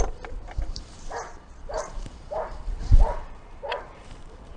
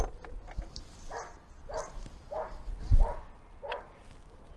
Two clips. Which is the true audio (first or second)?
second